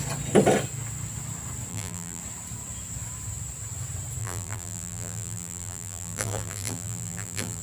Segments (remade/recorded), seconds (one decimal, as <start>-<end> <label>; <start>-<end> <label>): 0.0-1.7 recorded; 1.7-2.2 remade; 2.2-4.2 recorded; 4.2-7.6 remade